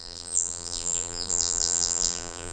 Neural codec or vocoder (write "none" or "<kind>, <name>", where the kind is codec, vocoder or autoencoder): vocoder, BigVGAN v2